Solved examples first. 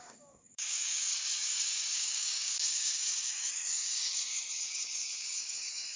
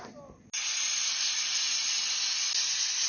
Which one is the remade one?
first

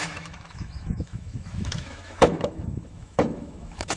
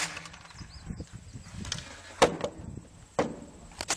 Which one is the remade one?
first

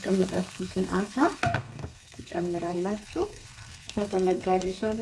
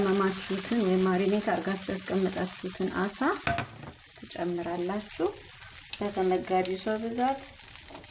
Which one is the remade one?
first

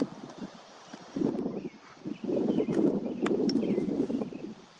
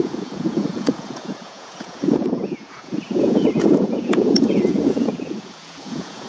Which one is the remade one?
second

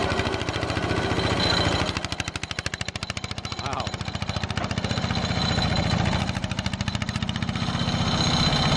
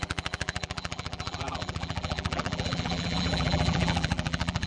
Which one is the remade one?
second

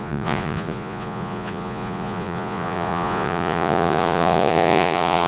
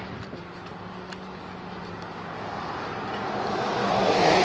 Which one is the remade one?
first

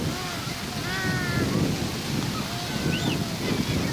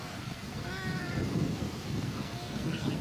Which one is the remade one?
second